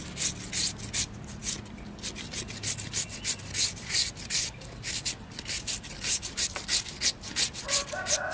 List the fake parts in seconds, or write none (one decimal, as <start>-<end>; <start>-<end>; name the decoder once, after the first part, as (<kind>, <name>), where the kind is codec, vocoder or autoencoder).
none